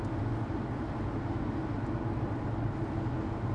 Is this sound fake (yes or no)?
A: no